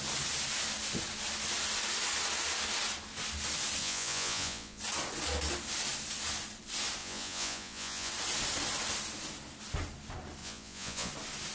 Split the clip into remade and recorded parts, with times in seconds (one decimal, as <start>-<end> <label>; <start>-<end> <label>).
0.0-3.8 recorded; 3.8-4.8 remade; 4.8-7.0 recorded; 7.0-8.1 remade; 8.1-10.4 recorded; 10.4-11.1 remade; 11.1-11.5 recorded